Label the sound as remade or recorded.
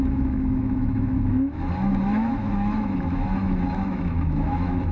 remade